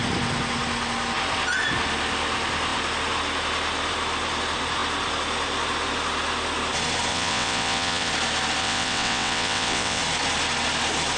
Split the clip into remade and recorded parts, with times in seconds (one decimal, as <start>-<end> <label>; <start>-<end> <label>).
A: 0.0-7.1 recorded; 7.1-8.1 remade; 8.1-8.6 recorded; 8.6-10.0 remade; 10.0-11.2 recorded